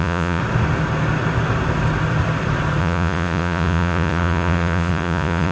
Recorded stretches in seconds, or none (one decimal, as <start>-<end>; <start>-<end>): 0.4-2.8